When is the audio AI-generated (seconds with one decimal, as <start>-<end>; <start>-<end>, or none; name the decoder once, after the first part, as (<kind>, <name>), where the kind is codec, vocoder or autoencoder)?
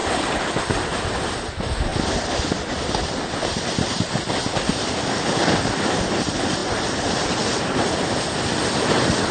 none